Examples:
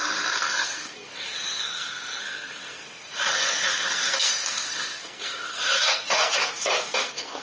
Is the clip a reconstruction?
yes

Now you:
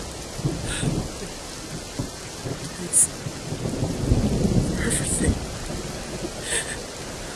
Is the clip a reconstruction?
no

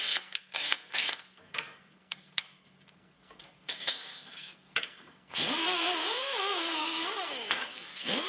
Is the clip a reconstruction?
yes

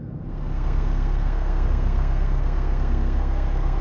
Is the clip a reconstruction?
yes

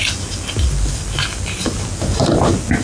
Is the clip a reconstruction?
no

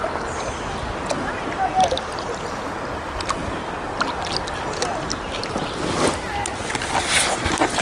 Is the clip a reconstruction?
no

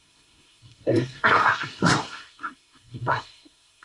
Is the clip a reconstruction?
yes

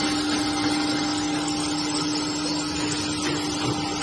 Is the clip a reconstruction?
no